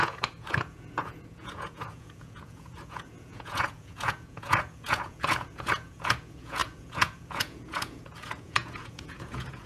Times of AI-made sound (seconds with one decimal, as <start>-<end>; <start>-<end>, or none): 0.0-9.7